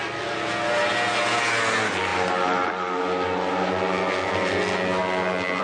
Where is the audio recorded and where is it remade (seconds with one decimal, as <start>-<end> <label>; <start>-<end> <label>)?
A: 0.0-5.6 recorded